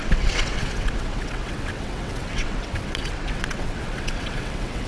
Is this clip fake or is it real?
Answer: fake